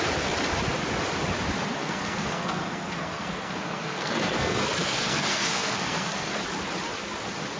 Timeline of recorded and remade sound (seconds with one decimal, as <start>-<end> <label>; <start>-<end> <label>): 0.0-1.8 recorded; 1.8-6.4 remade; 6.4-7.6 recorded